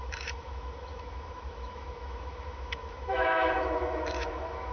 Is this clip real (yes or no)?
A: no